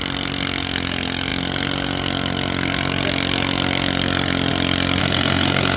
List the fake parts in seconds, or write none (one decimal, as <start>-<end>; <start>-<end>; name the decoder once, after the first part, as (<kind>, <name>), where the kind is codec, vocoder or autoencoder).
5.0-5.8 (codec, SNAC)

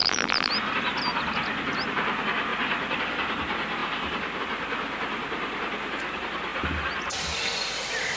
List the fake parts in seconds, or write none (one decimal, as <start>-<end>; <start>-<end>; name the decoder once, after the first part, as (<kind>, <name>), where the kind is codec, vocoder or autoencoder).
0.0-0.5 (vocoder, BigVGAN v2)

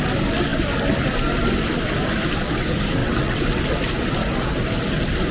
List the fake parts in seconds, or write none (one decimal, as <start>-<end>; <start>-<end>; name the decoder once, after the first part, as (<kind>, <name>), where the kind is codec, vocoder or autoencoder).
3.0-3.6 (vocoder, WaveNeXt)

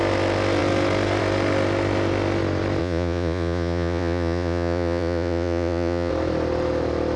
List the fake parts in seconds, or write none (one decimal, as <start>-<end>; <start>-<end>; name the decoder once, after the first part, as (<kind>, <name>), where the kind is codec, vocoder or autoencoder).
2.8-6.1 (vocoder, Vocos)

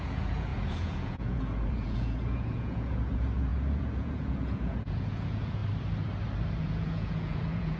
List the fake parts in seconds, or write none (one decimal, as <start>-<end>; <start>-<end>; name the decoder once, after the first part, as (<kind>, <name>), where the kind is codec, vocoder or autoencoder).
0.0-5.6 (vocoder, Vocos); 6.6-7.8